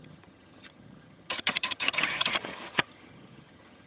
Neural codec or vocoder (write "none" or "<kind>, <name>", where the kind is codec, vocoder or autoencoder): vocoder, HiFi-GAN